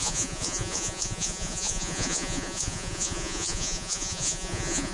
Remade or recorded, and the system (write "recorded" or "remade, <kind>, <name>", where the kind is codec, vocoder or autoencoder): remade, vocoder, Vocos